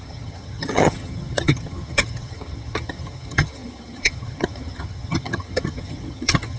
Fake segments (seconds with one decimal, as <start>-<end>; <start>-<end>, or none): 0.0-6.6